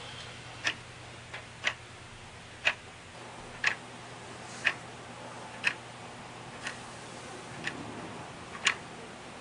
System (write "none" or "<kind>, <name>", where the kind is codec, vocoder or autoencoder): none